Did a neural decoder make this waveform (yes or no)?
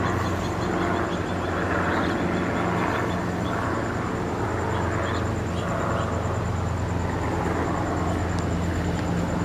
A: no